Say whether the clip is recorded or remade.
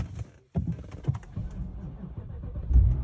recorded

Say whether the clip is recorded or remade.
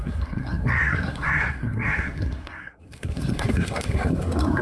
remade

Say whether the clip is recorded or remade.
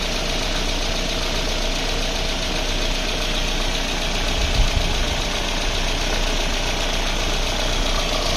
recorded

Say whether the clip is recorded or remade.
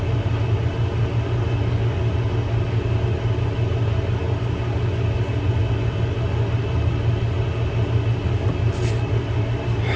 recorded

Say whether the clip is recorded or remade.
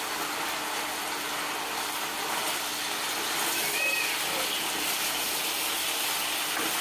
recorded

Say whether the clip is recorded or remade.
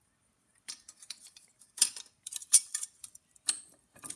remade